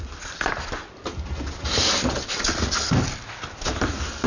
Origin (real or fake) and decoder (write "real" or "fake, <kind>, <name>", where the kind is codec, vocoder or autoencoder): real